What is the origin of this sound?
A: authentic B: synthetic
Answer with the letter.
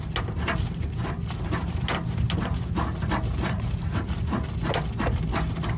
A